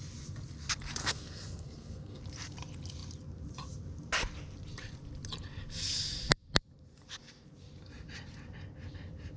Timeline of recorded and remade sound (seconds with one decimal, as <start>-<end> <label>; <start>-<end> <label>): 0.0-1.0 recorded; 1.0-2.2 remade; 2.2-9.4 recorded